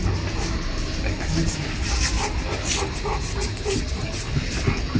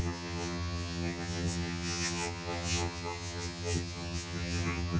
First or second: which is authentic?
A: first